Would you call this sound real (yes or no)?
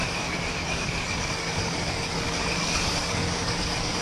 no